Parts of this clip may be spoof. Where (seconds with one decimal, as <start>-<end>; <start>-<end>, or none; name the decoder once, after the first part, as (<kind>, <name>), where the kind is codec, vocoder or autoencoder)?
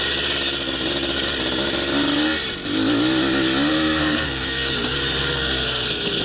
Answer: 3.7-4.7 (codec, SNAC); 5.2-6.2